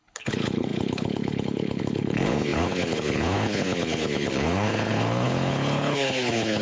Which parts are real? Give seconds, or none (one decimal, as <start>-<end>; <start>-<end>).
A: none